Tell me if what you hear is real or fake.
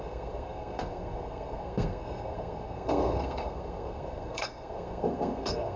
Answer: fake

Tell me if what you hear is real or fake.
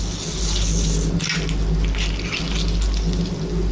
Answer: real